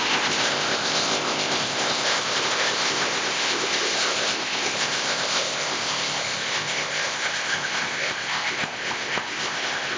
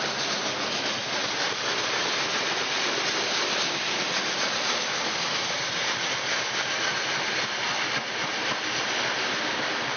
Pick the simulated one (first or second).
first